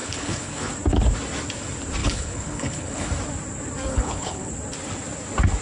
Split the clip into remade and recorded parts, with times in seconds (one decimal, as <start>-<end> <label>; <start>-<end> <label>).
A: 0.0-0.7 remade; 0.7-2.0 recorded; 2.0-3.1 remade; 3.1-3.9 recorded; 3.9-4.5 remade; 4.5-5.6 recorded

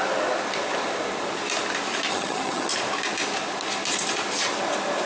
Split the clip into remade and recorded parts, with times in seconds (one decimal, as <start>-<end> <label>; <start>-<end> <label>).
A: 0.0-2.1 recorded; 2.1-2.7 remade; 2.7-5.1 recorded

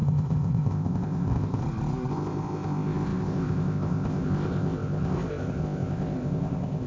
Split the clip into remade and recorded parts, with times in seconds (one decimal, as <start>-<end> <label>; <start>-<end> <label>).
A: 0.0-1.6 remade; 1.6-2.1 recorded; 2.1-6.9 remade

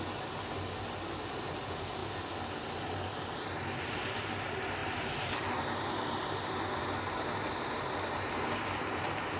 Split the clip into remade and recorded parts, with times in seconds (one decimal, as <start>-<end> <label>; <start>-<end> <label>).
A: 0.0-4.8 recorded; 4.8-9.4 remade